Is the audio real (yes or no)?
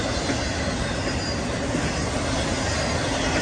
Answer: yes